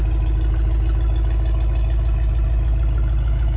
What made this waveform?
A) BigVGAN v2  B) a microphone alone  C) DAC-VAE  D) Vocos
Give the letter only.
B